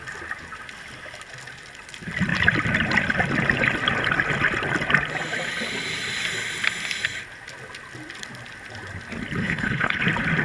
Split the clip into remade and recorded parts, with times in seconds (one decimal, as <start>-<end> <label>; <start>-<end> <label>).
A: 0.0-9.4 recorded; 9.4-10.0 remade; 10.0-10.4 recorded